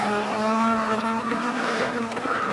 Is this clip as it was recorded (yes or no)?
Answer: no